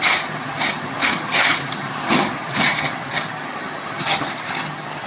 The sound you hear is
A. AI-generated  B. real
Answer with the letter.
A